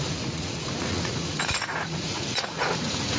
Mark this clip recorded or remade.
remade